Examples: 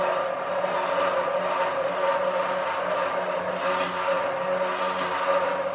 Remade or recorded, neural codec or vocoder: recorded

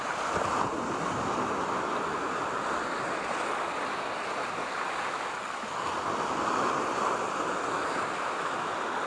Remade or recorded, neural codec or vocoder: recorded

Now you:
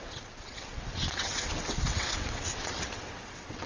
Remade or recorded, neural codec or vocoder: remade, vocoder, WaveNeXt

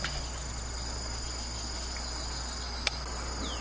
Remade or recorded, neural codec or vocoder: recorded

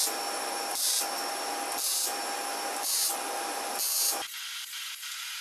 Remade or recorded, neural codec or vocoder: recorded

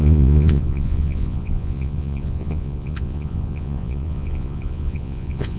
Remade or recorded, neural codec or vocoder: remade, vocoder, Vocos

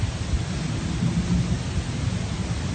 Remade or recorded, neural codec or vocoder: recorded